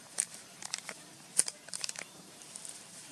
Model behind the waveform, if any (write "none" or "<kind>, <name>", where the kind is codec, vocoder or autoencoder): vocoder, BigVGAN v2